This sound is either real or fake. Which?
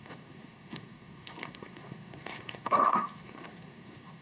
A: fake